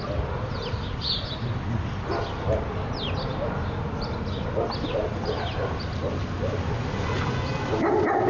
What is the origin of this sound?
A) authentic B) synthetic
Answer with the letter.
A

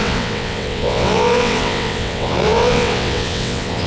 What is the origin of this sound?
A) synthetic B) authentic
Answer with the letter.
A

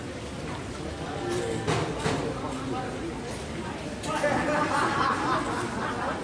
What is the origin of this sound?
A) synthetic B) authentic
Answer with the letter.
B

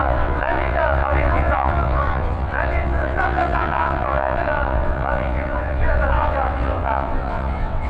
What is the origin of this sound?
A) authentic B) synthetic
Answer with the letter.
B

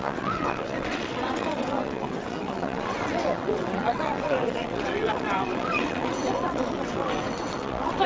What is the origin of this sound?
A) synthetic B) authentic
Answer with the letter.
A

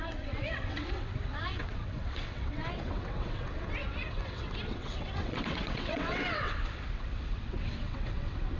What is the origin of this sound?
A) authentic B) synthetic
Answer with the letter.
B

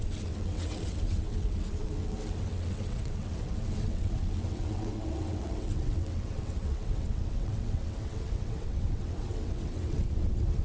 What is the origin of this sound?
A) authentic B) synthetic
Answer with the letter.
B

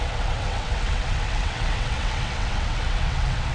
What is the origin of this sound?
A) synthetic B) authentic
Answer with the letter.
A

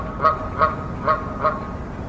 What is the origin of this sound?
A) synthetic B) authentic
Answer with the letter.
B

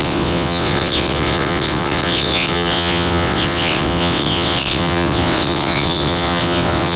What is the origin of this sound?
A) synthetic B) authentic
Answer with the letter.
A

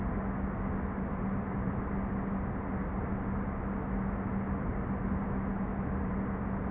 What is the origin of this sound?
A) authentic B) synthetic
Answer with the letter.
A